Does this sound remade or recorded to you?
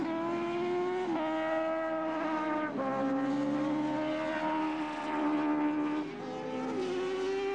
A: recorded